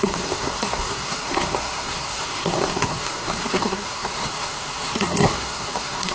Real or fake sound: fake